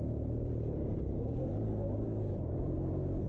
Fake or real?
real